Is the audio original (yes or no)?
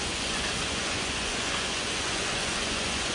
no